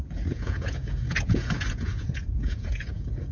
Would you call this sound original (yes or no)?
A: no